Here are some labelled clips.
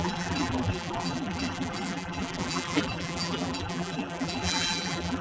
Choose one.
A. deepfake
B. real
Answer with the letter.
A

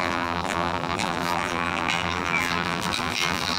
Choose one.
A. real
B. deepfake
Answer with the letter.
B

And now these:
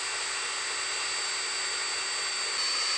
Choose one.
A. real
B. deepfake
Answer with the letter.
A